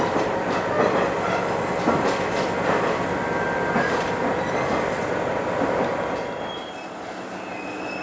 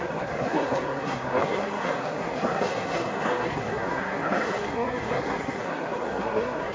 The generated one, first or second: second